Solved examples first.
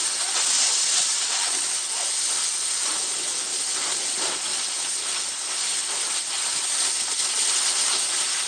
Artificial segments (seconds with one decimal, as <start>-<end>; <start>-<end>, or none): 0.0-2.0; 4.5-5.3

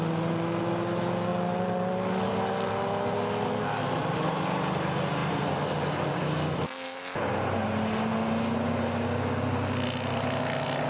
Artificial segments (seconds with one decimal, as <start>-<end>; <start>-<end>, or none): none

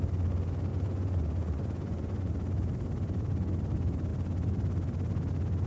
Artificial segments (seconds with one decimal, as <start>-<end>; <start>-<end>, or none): 0.7-2.3

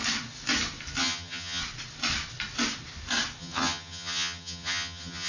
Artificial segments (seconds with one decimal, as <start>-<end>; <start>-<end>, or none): 1.0-1.6; 3.4-5.3

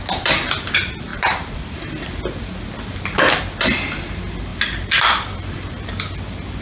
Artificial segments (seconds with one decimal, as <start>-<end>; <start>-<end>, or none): 1.1-1.8; 4.5-5.9

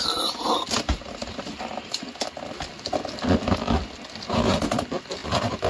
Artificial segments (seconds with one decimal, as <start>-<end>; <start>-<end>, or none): none

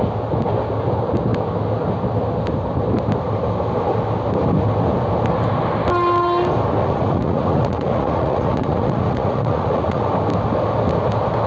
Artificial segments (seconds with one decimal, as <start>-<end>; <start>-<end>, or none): 6.8-10.1

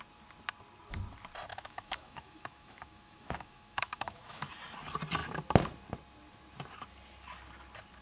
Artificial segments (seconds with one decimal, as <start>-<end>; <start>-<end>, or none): 1.5-4.5